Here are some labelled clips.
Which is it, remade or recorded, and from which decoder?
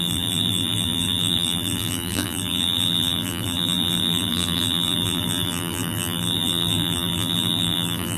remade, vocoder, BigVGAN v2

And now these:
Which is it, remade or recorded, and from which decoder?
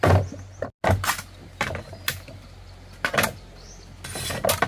recorded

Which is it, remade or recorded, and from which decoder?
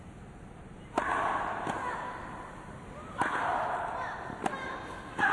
recorded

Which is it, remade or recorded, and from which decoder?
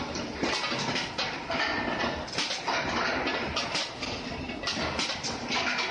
recorded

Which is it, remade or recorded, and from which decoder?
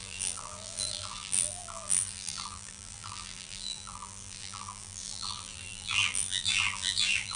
remade, vocoder, BigVGAN v2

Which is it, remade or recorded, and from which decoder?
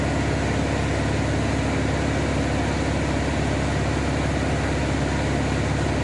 recorded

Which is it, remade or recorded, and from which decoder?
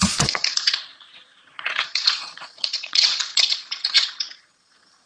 remade, vocoder, Vocos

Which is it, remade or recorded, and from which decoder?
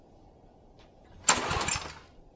recorded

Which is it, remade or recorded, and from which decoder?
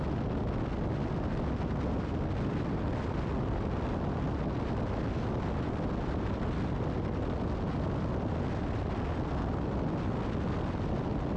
recorded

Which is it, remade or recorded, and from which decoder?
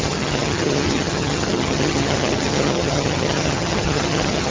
remade, vocoder, HiFi-GAN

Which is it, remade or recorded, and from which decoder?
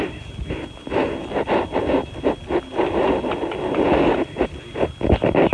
recorded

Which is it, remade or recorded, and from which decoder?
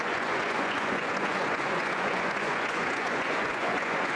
remade, vocoder, Vocos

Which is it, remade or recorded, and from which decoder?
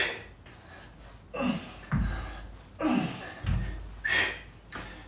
recorded